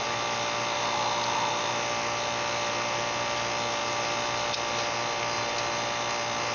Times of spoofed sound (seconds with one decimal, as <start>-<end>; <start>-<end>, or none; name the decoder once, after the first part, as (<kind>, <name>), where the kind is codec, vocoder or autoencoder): none